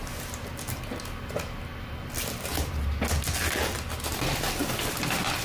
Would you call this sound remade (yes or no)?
no